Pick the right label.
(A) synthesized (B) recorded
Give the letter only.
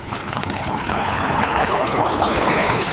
A